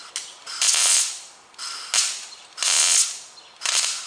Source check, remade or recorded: recorded